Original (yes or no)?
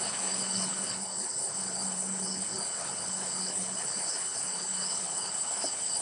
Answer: no